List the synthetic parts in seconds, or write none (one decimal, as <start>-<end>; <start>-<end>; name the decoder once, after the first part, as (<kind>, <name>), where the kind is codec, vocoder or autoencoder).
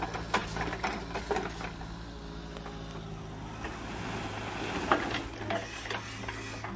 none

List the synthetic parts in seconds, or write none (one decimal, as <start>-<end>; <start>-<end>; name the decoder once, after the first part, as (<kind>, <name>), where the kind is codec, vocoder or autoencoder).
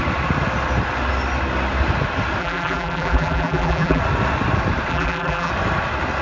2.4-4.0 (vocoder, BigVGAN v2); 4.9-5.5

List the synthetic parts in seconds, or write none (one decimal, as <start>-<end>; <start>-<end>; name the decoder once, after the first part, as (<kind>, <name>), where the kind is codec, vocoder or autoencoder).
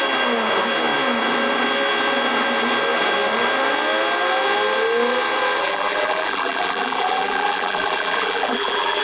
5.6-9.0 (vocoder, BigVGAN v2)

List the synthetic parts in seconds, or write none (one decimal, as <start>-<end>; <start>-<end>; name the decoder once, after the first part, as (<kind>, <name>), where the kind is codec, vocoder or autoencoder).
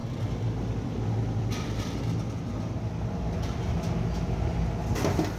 none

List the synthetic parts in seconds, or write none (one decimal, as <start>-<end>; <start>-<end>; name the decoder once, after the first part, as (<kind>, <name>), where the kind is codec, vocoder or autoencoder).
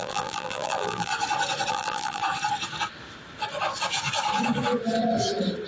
0.0-1.1 (vocoder, BigVGAN v2); 1.7-2.2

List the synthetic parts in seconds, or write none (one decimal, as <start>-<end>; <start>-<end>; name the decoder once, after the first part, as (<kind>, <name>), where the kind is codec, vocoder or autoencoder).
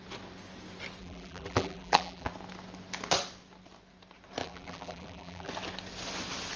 1.0-2.3 (vocoder, BigVGAN v2); 4.4-5.5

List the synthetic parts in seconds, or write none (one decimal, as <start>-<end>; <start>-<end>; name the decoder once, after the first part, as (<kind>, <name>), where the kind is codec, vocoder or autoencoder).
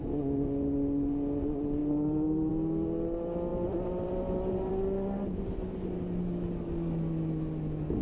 1.8-2.5 (vocoder, BigVGAN v2); 3.5-4.7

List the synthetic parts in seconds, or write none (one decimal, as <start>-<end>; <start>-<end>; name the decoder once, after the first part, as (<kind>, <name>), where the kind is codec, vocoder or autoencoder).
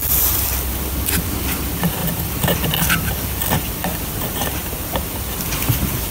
none